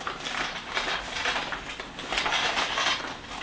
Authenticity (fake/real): real